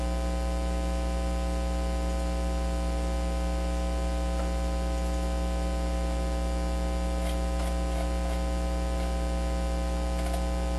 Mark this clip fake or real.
real